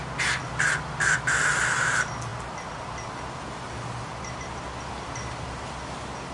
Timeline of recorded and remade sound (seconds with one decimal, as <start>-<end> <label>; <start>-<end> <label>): 0.0-6.3 recorded